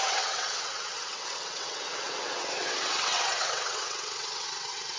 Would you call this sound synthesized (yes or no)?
yes